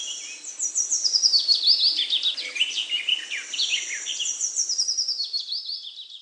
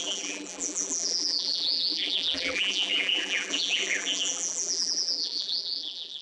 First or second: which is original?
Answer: first